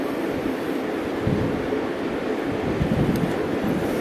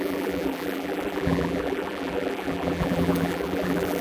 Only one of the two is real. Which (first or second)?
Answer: first